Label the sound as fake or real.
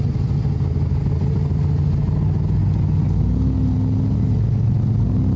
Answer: real